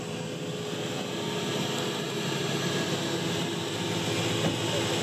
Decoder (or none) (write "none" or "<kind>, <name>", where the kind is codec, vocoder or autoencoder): none